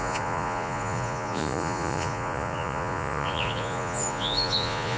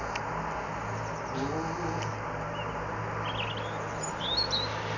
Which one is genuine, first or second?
second